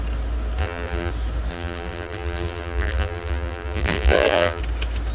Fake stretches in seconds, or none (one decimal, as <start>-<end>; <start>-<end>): 0.6-1.1; 1.5-4.6